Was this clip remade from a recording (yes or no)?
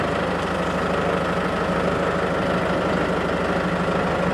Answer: no